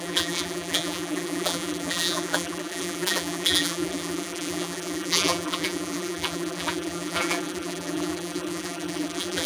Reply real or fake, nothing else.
fake